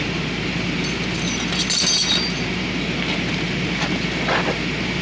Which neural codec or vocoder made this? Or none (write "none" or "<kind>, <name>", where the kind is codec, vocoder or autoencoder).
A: none